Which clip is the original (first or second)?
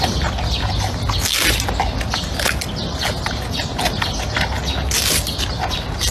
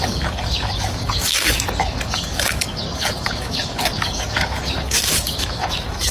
first